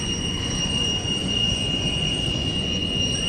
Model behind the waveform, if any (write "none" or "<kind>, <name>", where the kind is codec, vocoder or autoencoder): vocoder, Vocos